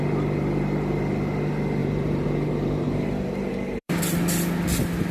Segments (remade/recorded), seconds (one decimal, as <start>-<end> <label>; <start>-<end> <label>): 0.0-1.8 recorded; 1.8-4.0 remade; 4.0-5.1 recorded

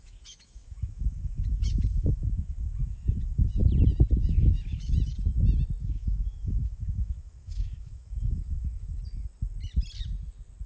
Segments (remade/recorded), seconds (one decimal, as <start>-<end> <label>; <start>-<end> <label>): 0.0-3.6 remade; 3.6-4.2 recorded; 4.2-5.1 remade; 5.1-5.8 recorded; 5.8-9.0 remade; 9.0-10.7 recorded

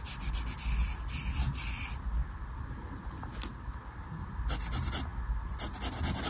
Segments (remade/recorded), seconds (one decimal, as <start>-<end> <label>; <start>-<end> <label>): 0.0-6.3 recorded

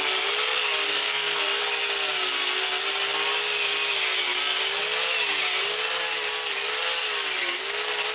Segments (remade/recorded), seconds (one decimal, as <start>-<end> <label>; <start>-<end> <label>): 0.0-0.9 recorded; 0.9-1.6 remade; 1.6-8.1 recorded

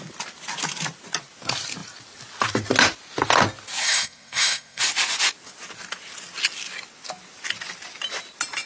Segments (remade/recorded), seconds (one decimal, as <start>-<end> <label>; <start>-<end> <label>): 0.0-3.8 recorded; 3.8-4.8 remade; 4.8-8.7 recorded

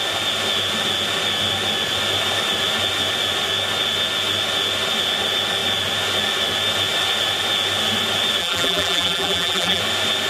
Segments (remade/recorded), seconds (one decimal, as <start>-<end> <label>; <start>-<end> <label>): 0.0-8.4 recorded; 8.4-9.8 remade; 9.8-10.3 recorded

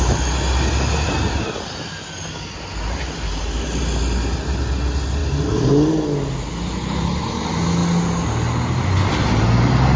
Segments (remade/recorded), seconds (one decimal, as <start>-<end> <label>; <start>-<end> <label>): 0.0-10.0 recorded

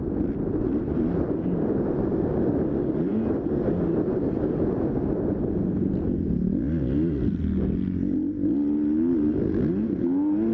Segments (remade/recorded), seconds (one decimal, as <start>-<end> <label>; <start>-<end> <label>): 0.0-10.5 recorded